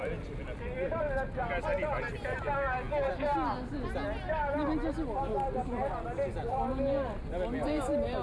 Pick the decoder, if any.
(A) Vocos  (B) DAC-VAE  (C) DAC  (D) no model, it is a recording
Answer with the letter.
D